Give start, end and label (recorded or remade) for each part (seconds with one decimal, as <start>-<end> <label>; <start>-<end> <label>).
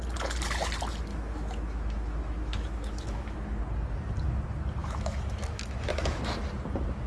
0.0-1.1 recorded; 1.1-3.6 remade; 3.6-4.8 recorded; 4.8-6.2 remade; 6.2-7.1 recorded